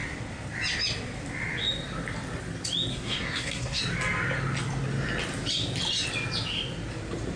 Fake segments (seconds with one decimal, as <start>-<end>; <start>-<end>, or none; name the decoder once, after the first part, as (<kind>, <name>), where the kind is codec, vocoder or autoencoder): 2.9-3.8 (codec, SNAC)